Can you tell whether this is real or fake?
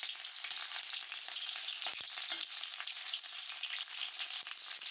fake